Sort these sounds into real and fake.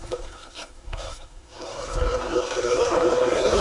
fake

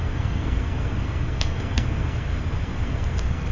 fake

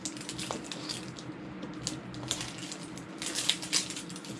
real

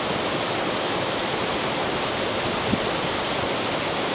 real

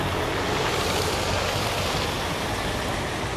real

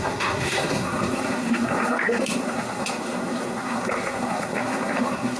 fake